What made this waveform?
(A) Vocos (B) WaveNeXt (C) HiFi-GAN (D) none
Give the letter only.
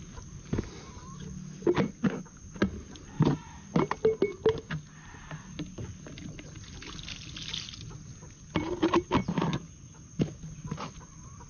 D